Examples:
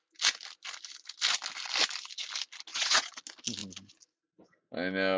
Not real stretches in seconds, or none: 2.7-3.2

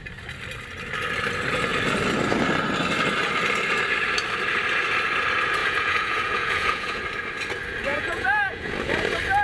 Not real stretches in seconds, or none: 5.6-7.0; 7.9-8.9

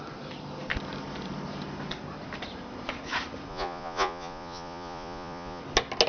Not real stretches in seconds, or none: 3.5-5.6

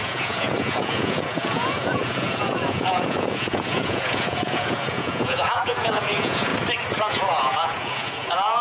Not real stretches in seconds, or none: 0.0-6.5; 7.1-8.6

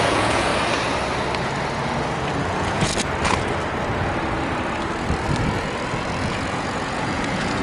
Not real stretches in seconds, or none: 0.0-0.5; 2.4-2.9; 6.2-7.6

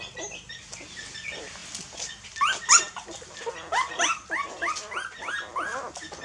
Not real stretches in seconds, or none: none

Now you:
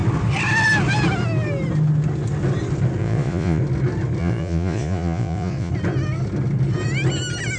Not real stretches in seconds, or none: 3.0-3.6; 4.2-5.7

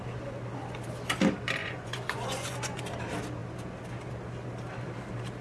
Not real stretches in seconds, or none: 1.6-2.8